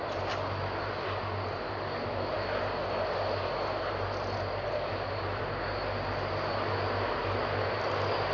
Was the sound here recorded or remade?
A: recorded